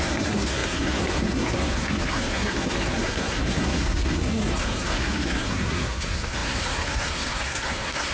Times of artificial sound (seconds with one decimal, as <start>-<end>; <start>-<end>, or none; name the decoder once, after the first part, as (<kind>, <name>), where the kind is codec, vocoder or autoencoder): 0.0-8.1 (codec, SNAC)